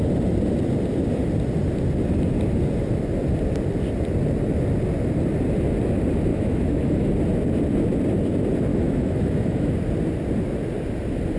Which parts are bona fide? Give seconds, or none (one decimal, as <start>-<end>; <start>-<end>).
0.0-6.3; 7.1-8.7; 9.7-11.4